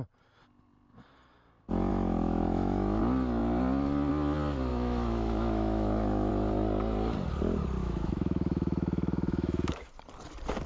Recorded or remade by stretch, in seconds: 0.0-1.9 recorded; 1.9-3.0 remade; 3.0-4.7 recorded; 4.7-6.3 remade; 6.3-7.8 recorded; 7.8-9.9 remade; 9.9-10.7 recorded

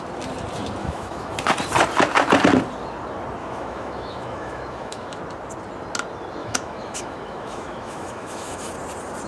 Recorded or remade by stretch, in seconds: 0.0-0.8 recorded; 0.8-1.3 remade; 1.3-3.4 recorded; 3.4-5.2 remade; 5.2-6.4 recorded; 6.4-8.7 remade; 8.7-9.3 recorded

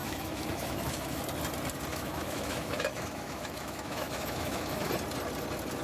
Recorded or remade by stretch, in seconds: 0.0-1.2 remade; 1.2-1.9 recorded; 1.9-4.9 remade; 4.9-5.8 recorded

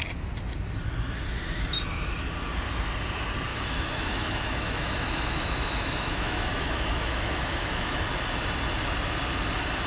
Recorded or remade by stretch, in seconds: 0.0-3.5 recorded; 3.5-8.0 remade; 8.0-9.9 recorded

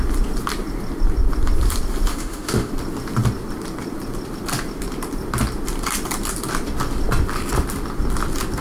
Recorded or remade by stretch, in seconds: 0.0-2.1 recorded; 2.1-2.7 remade; 2.7-8.6 recorded

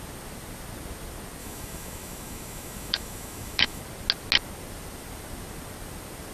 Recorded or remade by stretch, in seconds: 0.0-1.4 recorded; 1.4-3.8 remade; 3.8-6.3 recorded